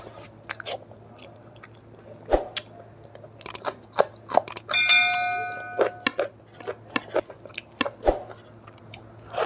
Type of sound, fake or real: real